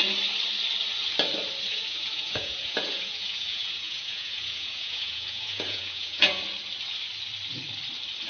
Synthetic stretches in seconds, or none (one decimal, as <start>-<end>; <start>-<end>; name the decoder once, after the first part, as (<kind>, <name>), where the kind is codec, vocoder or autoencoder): 1.7-6.4 (vocoder, Vocos)